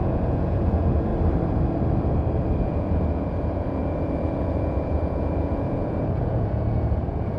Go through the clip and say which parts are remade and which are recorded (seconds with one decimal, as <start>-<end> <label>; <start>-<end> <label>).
0.0-1.1 remade; 1.1-2.6 recorded; 2.6-7.4 remade